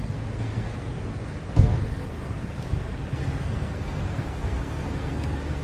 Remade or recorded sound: remade